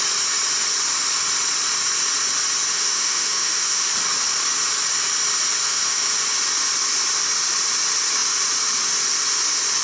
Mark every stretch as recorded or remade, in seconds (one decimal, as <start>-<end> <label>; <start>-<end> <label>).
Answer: 0.0-2.7 recorded; 2.7-3.9 remade; 3.9-5.6 recorded; 5.6-6.1 remade; 6.1-9.8 recorded